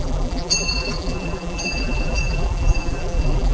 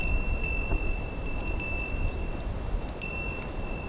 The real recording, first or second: second